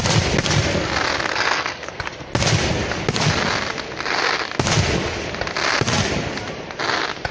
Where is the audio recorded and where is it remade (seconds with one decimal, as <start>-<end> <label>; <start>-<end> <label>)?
0.0-1.3 recorded; 1.3-2.0 remade; 2.0-7.3 recorded